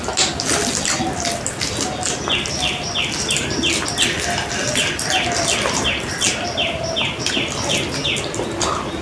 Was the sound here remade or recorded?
recorded